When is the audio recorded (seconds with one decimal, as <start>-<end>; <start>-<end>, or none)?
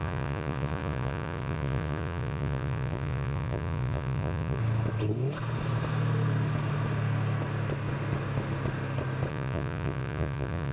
4.6-9.3